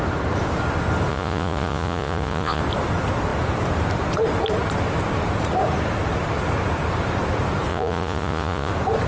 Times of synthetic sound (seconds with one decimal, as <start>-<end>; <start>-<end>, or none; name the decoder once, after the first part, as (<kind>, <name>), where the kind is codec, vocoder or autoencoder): 1.1-2.6 (vocoder, Vocos); 7.7-8.7